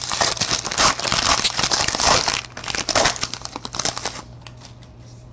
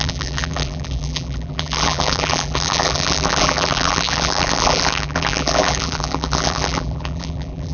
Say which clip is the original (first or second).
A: first